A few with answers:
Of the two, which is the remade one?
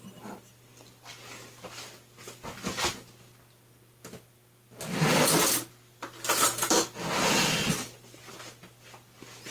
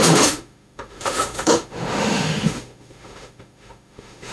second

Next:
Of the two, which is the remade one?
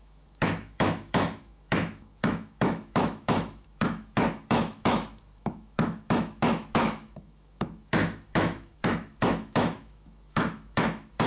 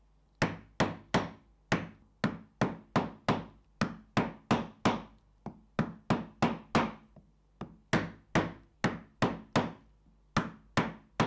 first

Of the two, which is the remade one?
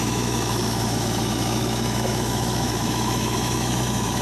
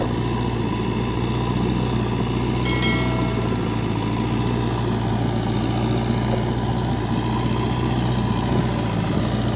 first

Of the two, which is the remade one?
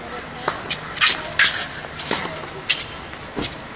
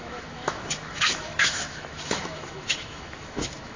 second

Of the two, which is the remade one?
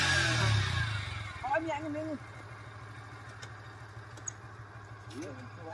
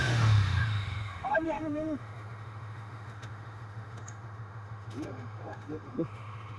second